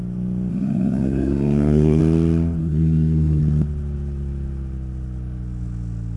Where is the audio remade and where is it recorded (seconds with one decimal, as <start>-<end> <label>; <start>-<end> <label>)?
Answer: 0.0-0.5 recorded; 0.5-2.0 remade; 2.0-2.6 recorded; 2.6-3.4 remade; 3.4-6.2 recorded